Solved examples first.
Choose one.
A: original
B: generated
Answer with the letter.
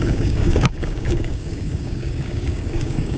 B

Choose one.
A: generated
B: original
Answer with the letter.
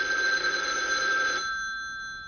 B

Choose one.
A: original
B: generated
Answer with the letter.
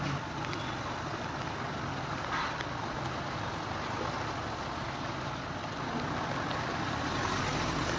A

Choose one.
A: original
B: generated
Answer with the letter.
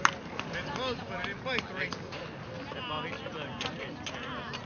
A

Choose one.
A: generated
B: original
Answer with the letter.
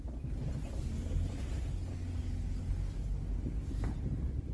B